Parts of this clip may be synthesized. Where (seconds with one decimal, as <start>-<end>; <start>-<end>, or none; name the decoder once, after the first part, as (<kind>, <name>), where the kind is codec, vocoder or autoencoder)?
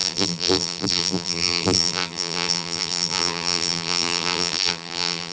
0.0-5.3 (vocoder, BigVGAN v2)